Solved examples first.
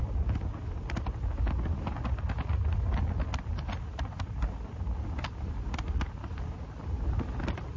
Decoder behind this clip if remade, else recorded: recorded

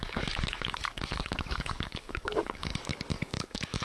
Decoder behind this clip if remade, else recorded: remade, codec, DAC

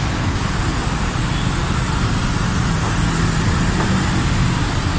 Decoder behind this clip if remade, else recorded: recorded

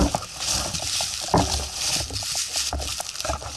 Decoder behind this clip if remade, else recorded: recorded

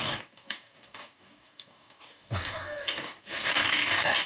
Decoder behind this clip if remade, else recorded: remade, codec, DAC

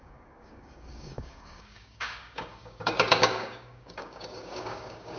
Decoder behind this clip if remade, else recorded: remade, codec, DAC